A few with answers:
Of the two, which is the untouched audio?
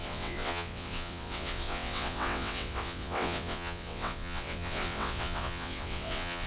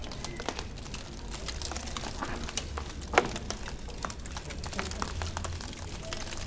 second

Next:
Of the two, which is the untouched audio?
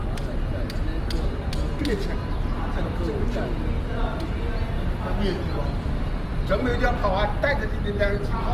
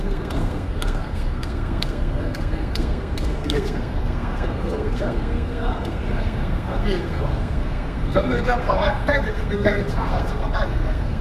first